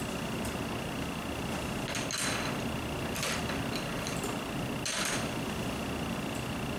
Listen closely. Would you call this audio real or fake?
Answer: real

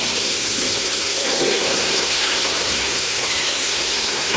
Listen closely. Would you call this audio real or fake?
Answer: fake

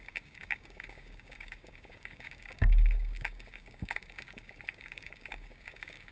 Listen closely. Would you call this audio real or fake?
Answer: fake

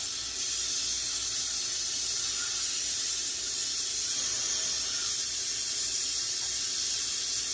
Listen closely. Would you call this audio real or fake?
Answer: real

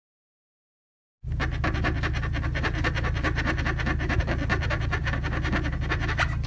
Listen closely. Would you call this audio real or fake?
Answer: real